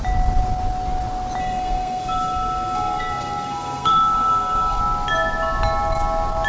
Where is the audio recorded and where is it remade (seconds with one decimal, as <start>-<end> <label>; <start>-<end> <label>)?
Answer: 0.0-1.4 recorded; 1.4-4.8 remade; 4.8-6.5 recorded